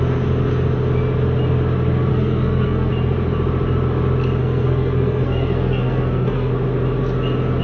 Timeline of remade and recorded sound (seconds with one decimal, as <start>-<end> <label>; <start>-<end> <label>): 0.0-2.1 recorded; 2.1-2.9 remade; 2.9-4.4 recorded; 4.4-6.5 remade; 6.5-7.6 recorded